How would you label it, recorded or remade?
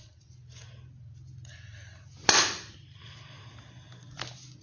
recorded